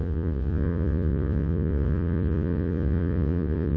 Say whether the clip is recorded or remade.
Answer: remade